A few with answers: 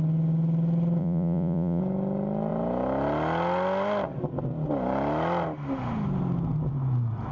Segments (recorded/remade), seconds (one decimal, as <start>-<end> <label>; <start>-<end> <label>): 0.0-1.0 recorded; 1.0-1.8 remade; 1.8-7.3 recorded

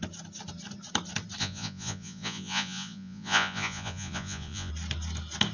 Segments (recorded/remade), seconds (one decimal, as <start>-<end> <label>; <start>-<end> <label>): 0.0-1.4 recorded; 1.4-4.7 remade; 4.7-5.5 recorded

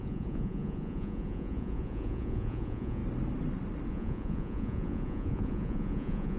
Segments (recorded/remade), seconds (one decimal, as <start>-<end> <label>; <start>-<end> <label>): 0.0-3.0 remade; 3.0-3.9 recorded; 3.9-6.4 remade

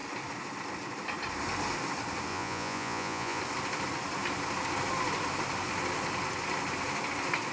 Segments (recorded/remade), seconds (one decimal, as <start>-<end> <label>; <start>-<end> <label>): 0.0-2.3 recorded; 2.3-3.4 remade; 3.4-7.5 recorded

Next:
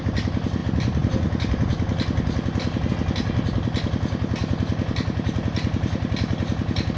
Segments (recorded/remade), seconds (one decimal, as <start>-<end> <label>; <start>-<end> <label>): 0.0-7.0 recorded